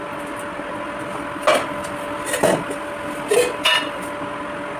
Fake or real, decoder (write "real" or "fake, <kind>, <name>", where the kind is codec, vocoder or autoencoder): real